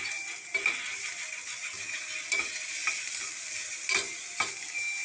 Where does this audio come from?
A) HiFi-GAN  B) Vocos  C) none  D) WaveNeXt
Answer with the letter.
C